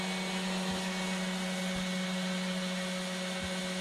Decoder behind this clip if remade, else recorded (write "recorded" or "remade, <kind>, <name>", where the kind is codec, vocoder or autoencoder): recorded